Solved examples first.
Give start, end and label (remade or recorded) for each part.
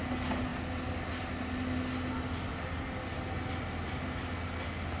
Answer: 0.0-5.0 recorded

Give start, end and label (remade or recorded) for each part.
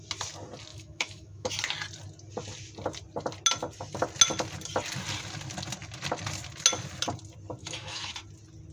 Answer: 0.0-0.7 recorded; 0.7-1.5 remade; 1.5-7.6 recorded; 7.6-8.1 remade; 8.1-8.7 recorded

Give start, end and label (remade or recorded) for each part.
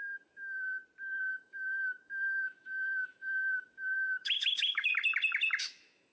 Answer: 0.0-0.8 remade; 0.8-1.3 recorded; 1.3-4.9 remade; 4.9-5.6 recorded; 5.6-6.1 remade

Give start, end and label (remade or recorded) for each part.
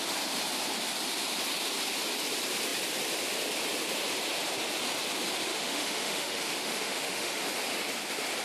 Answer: 0.0-5.5 recorded; 5.5-7.4 remade; 7.4-8.4 recorded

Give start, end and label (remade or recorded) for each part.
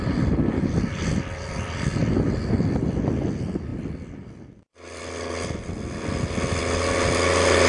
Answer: 0.0-7.7 recorded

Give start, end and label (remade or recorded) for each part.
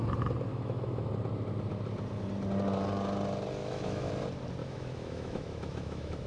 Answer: 0.0-0.5 recorded; 0.5-1.1 remade; 1.1-3.6 recorded; 3.6-4.1 remade; 4.1-4.6 recorded; 4.6-6.3 remade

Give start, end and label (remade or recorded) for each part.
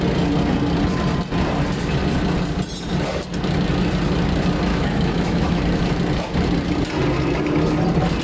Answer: 0.0-4.7 recorded; 4.7-5.6 remade; 5.6-8.2 recorded